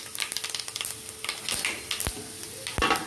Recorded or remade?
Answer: recorded